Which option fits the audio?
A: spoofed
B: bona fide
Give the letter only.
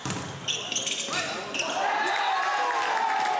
B